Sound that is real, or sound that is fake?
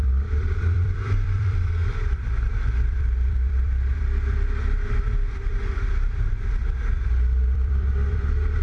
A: fake